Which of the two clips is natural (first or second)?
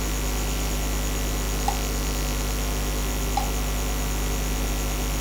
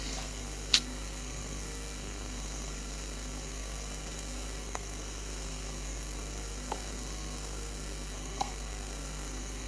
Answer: first